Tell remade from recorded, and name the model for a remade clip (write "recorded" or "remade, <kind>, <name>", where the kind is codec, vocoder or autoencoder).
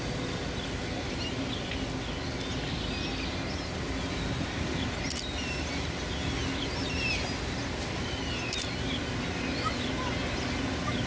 recorded